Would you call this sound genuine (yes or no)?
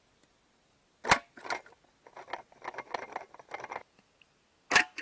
yes